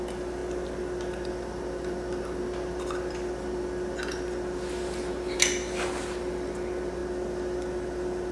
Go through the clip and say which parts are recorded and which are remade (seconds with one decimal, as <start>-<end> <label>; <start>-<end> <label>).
0.0-8.3 recorded